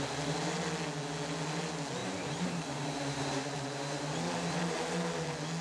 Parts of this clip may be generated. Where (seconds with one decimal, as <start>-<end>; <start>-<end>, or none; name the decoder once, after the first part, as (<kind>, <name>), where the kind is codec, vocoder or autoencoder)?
2.0-4.0 (vocoder, BigVGAN v2)